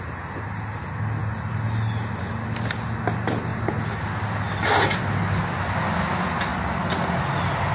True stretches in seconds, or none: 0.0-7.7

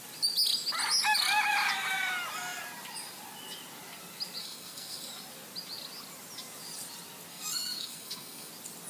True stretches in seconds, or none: 0.0-4.4; 5.1-7.3; 8.5-8.9

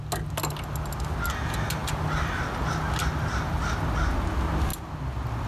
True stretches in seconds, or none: 0.0-5.5

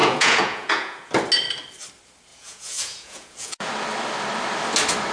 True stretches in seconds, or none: 1.1-2.3; 3.7-5.1

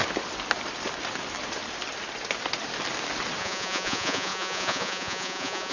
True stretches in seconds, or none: 0.0-3.4

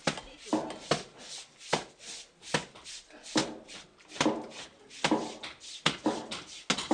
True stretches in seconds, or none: 0.0-6.9

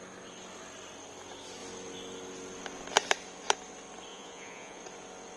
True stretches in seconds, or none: 0.0-4.1; 4.8-5.4